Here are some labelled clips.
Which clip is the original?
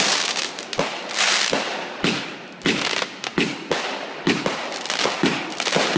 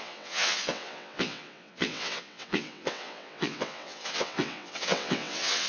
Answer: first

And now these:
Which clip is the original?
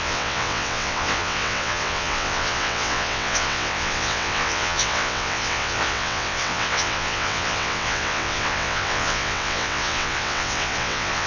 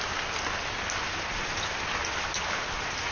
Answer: second